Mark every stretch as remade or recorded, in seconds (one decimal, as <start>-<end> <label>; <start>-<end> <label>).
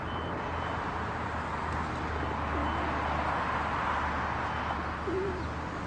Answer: 0.0-5.9 recorded